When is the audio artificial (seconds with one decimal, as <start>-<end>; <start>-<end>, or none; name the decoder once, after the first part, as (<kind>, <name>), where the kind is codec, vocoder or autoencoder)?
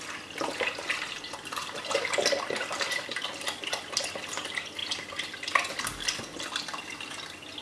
none